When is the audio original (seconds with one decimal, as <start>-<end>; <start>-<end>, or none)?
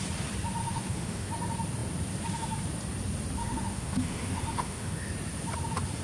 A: 0.0-0.6; 1.3-3.4; 5.1-6.0